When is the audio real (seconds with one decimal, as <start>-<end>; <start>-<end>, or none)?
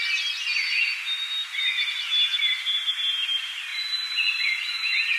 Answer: 0.0-5.2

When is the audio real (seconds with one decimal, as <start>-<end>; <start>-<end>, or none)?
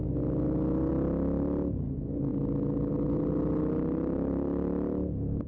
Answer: 0.0-5.5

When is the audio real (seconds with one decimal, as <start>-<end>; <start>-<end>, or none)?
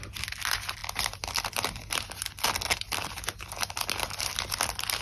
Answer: 0.0-5.0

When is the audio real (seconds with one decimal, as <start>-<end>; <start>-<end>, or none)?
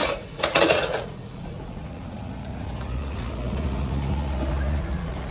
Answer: none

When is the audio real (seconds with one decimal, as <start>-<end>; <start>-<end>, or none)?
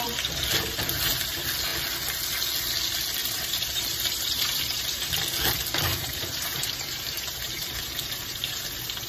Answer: 0.0-3.2; 5.2-5.9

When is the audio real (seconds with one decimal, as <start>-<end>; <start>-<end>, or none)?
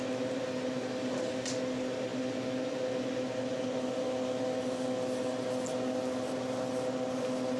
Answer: 0.0-7.6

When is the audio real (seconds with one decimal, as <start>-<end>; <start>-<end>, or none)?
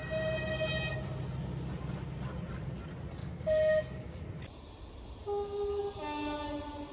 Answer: 0.0-3.2; 4.2-5.2; 5.8-6.9